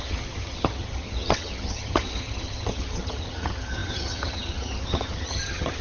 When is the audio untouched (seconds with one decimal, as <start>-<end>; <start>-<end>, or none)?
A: none